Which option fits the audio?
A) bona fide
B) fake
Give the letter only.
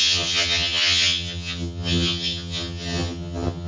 B